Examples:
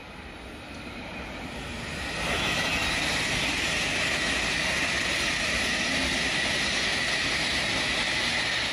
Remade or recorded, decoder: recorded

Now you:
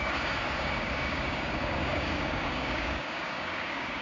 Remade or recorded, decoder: remade, codec, DAC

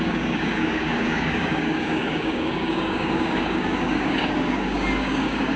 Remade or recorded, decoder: remade, codec, DAC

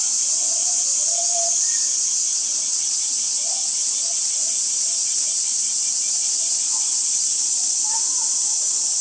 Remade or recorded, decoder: recorded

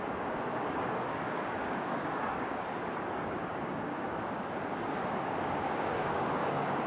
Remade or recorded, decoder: remade, codec, DAC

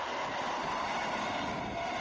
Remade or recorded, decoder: recorded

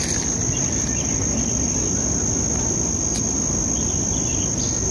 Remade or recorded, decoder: recorded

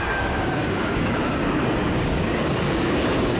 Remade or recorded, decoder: remade, codec, DAC